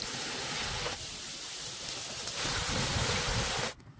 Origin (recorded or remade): recorded